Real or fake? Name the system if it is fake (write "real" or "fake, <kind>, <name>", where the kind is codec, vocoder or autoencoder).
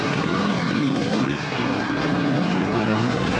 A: fake, codec, SNAC